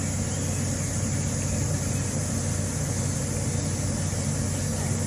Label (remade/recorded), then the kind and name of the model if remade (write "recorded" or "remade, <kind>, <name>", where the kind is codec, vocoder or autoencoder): recorded